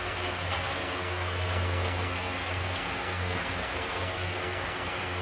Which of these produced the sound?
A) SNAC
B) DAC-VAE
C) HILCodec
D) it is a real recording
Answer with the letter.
A